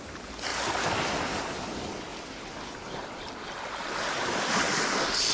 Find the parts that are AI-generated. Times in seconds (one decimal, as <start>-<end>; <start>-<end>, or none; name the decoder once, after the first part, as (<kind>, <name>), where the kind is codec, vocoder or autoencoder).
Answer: none